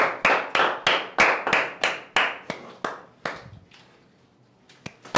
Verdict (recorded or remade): recorded